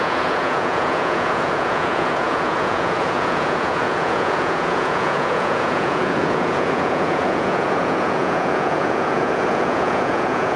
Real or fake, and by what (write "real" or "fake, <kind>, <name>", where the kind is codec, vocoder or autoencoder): fake, vocoder, Vocos